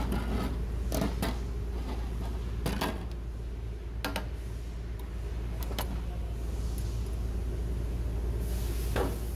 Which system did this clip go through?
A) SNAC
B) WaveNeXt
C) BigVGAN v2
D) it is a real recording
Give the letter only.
D